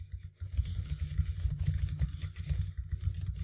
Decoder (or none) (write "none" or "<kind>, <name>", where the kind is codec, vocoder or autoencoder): none